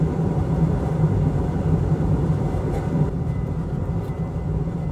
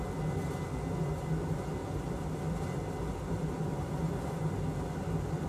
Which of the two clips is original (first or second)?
second